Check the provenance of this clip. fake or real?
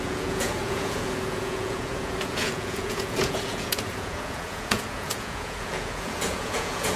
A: fake